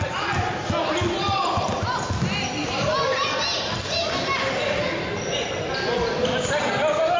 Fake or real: real